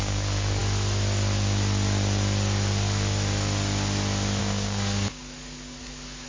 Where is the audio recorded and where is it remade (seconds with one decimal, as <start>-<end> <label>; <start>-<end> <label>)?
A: 0.0-0.6 remade; 0.6-4.4 recorded; 4.4-6.3 remade

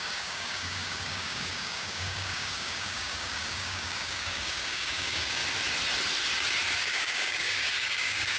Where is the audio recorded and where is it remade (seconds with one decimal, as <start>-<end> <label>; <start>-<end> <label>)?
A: 0.0-5.4 remade; 5.4-6.8 recorded; 6.8-8.4 remade

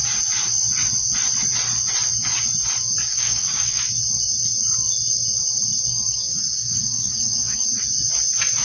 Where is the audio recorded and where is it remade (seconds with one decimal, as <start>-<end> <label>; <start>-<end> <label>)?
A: 0.0-3.1 recorded; 3.1-3.8 remade; 3.8-5.9 recorded; 5.9-7.8 remade; 7.8-8.6 recorded